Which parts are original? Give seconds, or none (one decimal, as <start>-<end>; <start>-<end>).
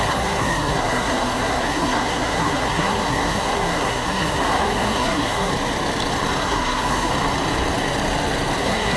5.5-6.4; 7.1-8.6